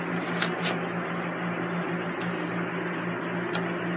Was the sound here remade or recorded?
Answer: recorded